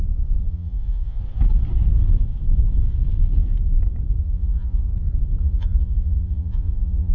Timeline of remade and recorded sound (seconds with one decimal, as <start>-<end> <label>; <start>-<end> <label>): 0.0-0.5 recorded; 0.5-1.2 remade; 1.2-4.2 recorded; 4.2-4.9 remade; 4.9-5.4 recorded; 5.4-7.1 remade

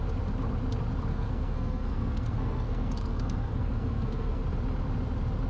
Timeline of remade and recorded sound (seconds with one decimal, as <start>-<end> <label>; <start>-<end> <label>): 0.0-1.1 recorded; 1.1-4.4 remade; 4.4-5.5 recorded

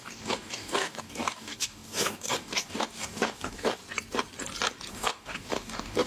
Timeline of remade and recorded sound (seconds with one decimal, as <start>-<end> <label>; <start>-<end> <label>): 0.0-3.8 remade; 3.8-4.9 recorded; 4.9-6.1 remade

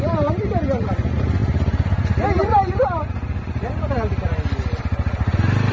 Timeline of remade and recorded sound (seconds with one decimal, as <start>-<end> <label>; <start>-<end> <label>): 0.0-5.7 recorded

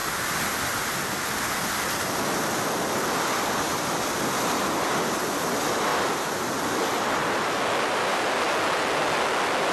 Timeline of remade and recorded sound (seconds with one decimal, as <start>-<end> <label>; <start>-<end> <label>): 0.0-9.7 recorded

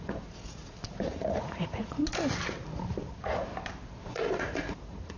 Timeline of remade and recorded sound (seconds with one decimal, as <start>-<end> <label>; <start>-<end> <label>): 0.0-2.0 remade; 2.0-3.1 recorded; 3.1-3.5 remade; 3.5-4.0 recorded; 4.0-5.2 remade